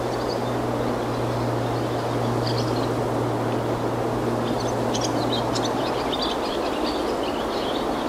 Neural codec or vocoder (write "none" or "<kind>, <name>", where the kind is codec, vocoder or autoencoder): none